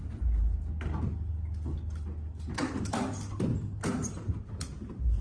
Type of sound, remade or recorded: recorded